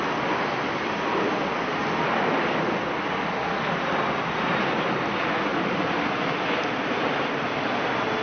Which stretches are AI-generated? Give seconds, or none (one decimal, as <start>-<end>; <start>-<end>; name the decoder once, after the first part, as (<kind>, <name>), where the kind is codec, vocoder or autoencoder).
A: 1.8-4.5 (vocoder, BigVGAN v2); 5.5-7.6